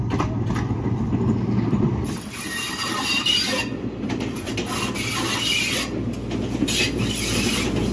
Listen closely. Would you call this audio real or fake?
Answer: real